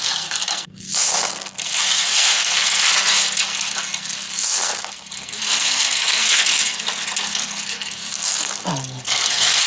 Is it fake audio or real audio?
fake